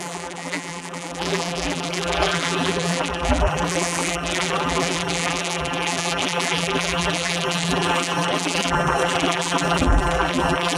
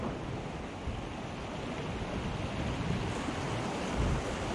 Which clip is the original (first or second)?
second